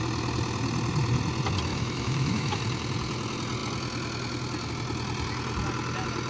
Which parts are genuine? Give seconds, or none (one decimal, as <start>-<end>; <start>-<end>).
0.0-1.7; 2.6-6.3